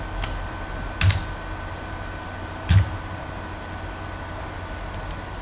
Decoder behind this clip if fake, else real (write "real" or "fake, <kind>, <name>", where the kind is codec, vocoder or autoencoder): real